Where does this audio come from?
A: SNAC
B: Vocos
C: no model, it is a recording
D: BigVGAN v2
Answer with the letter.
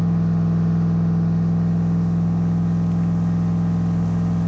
C